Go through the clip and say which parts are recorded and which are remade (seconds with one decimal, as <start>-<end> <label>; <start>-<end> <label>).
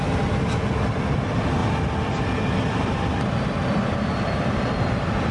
0.0-5.3 recorded